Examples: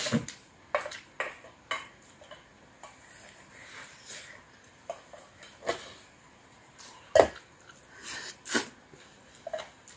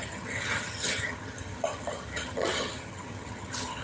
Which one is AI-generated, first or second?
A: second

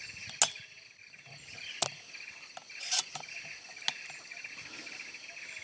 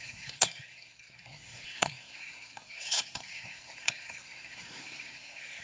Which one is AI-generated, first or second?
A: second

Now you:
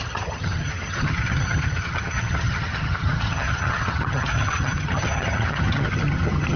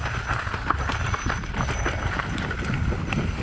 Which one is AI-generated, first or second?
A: first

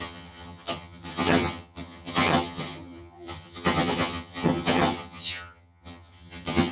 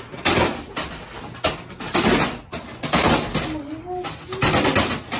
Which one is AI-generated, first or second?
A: first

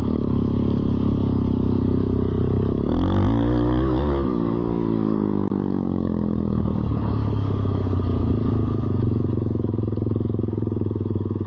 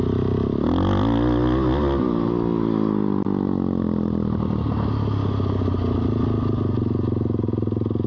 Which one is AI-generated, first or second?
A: first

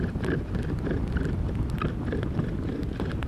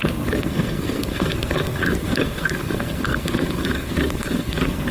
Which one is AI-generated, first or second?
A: second